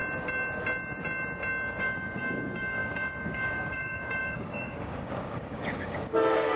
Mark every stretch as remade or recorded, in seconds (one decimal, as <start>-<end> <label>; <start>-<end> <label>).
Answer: 0.0-1.8 recorded; 1.8-6.6 remade